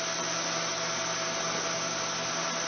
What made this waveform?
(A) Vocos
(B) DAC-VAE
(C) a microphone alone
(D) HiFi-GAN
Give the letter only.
C